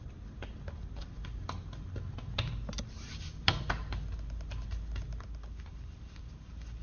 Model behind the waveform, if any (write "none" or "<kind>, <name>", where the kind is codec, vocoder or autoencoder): none